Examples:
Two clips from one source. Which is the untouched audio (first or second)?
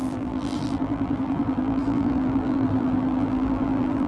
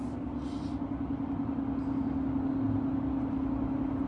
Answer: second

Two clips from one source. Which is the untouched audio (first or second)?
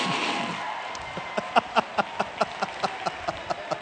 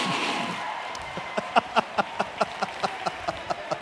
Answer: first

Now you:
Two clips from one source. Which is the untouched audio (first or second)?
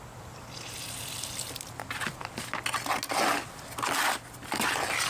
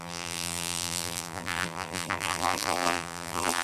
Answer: first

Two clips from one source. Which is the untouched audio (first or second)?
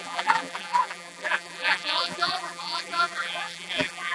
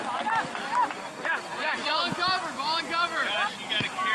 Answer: second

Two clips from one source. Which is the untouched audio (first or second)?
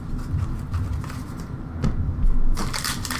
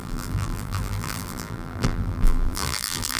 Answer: first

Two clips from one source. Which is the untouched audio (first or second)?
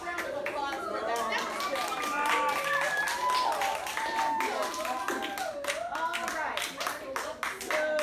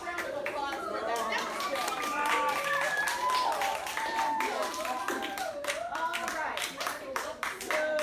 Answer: first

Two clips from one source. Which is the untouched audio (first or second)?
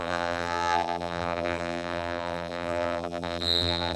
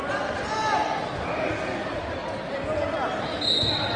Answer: second